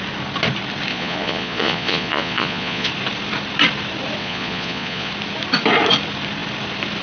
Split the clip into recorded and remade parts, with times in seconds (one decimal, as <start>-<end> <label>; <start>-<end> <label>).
0.0-0.9 recorded; 0.9-2.9 remade; 2.9-4.2 recorded; 4.2-5.1 remade; 5.1-7.0 recorded